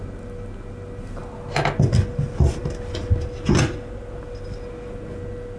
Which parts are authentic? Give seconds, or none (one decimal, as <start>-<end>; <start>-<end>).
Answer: 0.0-5.6